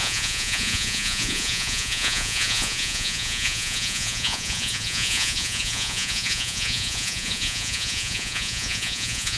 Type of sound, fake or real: fake